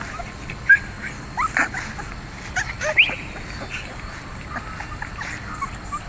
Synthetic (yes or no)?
no